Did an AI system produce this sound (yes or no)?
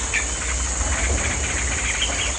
no